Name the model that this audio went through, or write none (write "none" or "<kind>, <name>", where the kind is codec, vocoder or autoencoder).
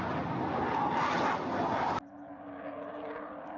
none